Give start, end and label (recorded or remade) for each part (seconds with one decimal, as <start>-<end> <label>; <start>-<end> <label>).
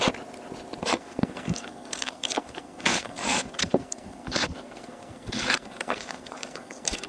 0.0-0.8 recorded; 0.8-7.1 remade